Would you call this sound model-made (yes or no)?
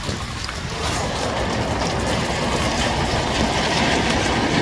no